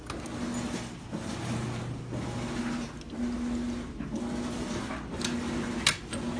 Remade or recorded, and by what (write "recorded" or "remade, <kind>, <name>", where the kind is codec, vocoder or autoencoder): recorded